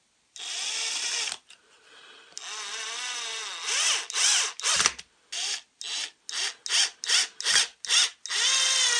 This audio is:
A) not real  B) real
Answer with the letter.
B